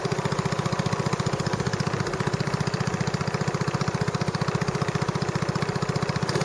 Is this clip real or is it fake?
real